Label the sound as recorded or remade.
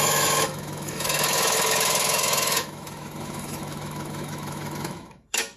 remade